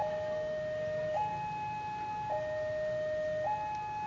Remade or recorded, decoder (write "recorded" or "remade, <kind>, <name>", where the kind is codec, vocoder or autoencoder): recorded